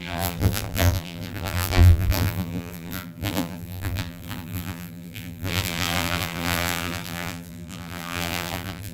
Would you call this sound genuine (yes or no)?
no